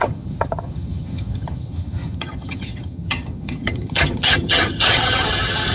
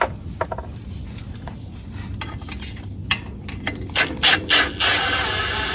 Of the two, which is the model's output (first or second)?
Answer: first